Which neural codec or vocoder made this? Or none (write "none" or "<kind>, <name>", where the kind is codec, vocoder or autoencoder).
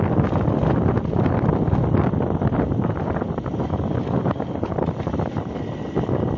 none